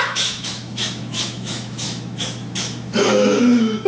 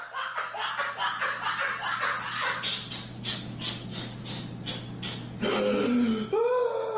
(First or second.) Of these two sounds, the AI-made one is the first